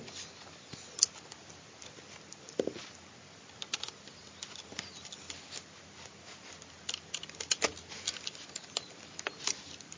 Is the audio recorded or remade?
recorded